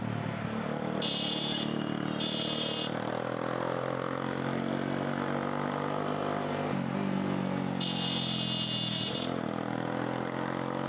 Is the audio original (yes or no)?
yes